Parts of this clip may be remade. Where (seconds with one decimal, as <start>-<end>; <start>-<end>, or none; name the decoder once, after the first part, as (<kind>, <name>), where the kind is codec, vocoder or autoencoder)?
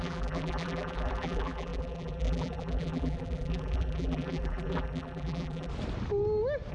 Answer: 0.0-5.7 (vocoder, BigVGAN v2)